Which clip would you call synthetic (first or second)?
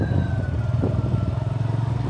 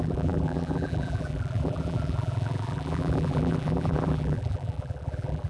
second